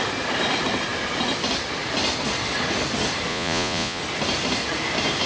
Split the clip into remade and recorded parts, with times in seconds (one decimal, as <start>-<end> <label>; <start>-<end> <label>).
0.0-3.3 recorded; 3.3-4.0 remade; 4.0-5.3 recorded